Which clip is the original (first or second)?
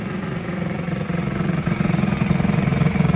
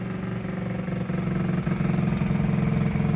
second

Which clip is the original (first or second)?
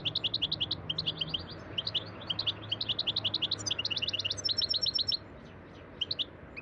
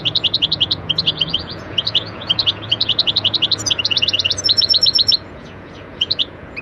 first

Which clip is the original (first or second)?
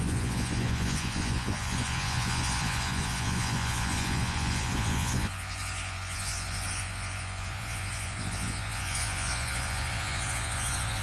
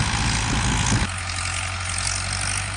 second